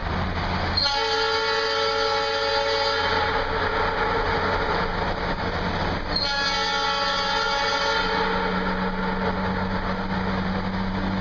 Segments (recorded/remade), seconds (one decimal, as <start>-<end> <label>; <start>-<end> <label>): 0.0-11.2 recorded